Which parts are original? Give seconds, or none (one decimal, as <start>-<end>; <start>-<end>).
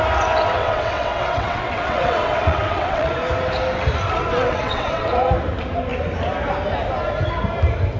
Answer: 0.0-0.6; 3.1-4.2; 5.1-8.0